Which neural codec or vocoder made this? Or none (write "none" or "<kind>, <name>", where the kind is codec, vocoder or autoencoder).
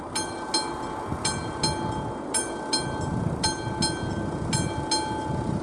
none